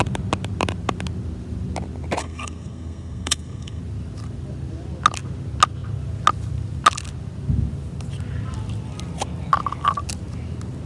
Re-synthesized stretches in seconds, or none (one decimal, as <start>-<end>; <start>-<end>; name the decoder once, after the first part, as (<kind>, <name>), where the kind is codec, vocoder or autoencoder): 2.2-3.8 (codec, SNAC)